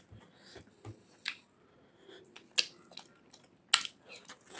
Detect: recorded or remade recorded